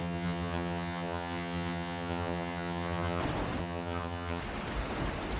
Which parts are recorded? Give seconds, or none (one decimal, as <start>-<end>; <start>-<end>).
3.2-3.6; 4.4-5.4